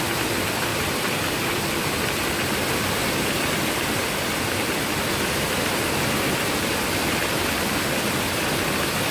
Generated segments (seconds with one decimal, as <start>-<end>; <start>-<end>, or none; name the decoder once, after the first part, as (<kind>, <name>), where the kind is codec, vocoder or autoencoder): 0.7-4.3 (vocoder, BigVGAN v2)